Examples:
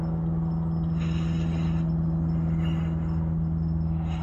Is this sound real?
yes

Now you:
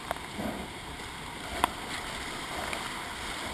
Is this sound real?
yes